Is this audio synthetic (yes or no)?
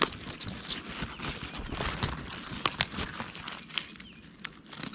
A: no